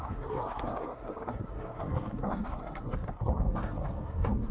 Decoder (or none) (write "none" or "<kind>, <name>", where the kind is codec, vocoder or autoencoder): codec, SNAC